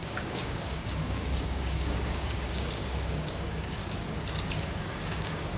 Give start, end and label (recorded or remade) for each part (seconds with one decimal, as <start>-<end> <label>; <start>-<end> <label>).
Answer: 0.0-3.8 remade; 3.8-4.6 recorded; 4.6-5.6 remade